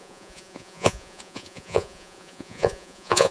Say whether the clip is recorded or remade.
remade